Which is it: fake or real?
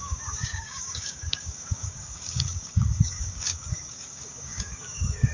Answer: fake